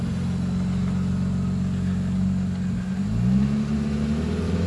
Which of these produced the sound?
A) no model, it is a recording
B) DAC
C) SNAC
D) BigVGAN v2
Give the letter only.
A